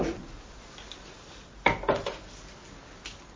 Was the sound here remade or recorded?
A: recorded